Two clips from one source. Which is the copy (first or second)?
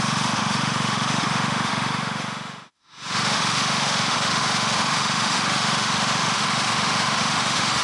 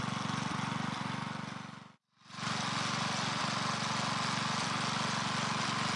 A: first